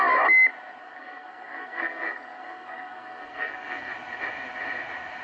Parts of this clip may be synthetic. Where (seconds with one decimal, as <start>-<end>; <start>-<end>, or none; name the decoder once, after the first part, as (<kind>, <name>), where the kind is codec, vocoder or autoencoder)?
0.8-3.9 (codec, SNAC)